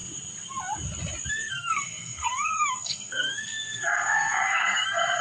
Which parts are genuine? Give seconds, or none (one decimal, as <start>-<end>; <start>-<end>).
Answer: 0.0-1.3